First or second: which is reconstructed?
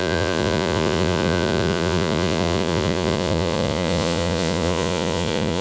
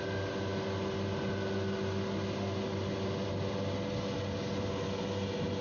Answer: first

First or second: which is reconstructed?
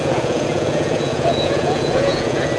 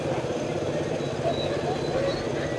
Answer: first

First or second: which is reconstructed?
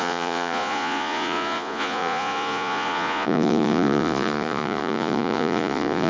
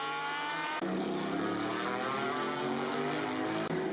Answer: first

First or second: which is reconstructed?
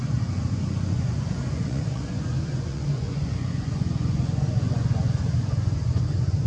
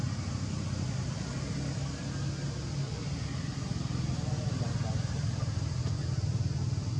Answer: first